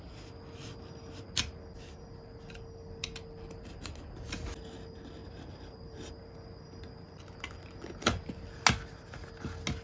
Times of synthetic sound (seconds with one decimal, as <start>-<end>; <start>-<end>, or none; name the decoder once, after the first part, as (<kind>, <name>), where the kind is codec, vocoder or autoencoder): 5.2-6.1 (vocoder, BigVGAN v2)